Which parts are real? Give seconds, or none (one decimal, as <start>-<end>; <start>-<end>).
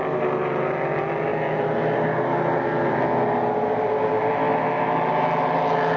0.0-6.0